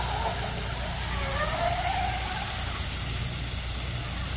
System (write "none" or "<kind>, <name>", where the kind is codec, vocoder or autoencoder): none